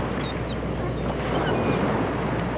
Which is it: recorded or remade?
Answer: recorded